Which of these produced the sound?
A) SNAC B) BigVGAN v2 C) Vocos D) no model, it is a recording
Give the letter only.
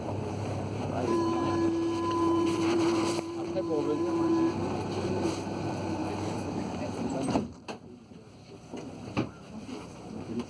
B